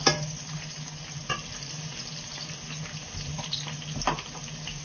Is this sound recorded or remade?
recorded